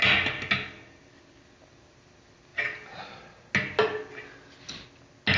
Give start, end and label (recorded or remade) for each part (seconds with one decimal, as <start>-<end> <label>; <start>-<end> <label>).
0.0-5.4 recorded